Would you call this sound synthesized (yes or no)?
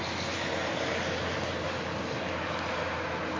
no